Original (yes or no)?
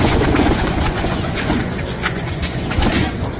no